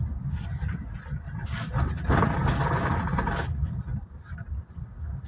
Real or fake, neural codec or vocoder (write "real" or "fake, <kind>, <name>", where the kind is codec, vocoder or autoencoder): real